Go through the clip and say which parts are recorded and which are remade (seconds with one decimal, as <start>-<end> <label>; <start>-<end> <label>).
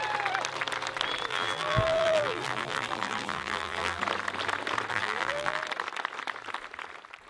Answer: 0.0-1.3 recorded; 1.3-4.0 remade; 4.0-4.9 recorded; 4.9-5.6 remade; 5.6-7.3 recorded